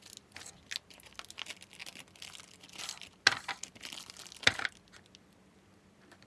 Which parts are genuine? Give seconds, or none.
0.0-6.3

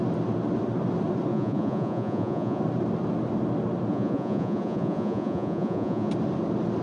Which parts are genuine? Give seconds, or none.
0.0-1.3; 2.6-3.9; 6.1-6.8